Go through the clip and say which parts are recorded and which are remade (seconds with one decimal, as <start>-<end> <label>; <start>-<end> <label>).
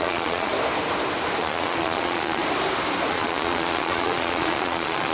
0.0-0.5 remade; 0.5-1.4 recorded; 1.4-2.4 remade; 2.4-3.1 recorded; 3.1-5.1 remade